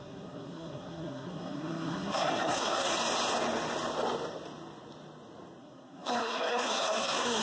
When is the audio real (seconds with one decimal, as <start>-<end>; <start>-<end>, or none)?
2.9-5.6